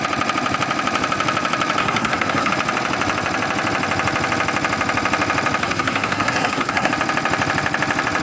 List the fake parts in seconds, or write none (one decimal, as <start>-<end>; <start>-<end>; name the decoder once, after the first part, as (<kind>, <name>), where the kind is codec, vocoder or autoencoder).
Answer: 1.8-2.5 (codec, SNAC); 5.6-6.9